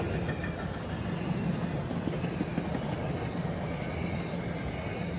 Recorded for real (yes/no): yes